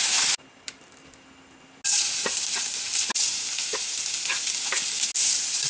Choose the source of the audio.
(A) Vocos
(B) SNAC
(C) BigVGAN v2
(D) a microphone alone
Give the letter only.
D